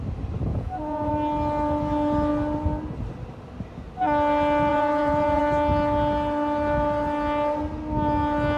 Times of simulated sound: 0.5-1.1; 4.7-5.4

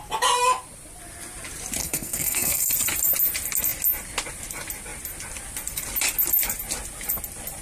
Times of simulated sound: 1.8-2.7

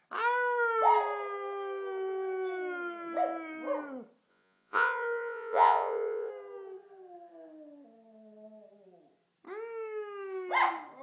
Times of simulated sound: 4.3-6.3

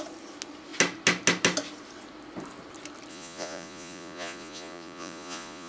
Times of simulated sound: 3.1-5.7

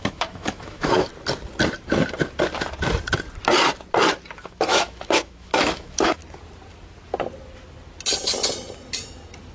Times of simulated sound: 0.0-1.1; 4.3-6.2

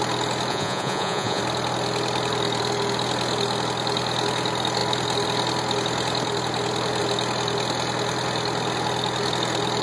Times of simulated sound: 0.5-1.4

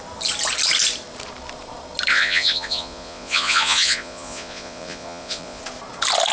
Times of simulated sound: 2.1-5.6

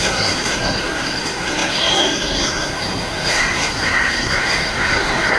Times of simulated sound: 0.0-5.4